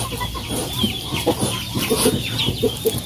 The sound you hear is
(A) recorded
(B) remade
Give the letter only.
B